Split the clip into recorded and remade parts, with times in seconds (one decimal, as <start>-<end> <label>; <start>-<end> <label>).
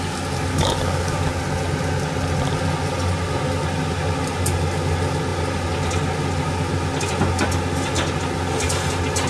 0.0-0.5 recorded; 0.5-1.3 remade; 1.3-9.3 recorded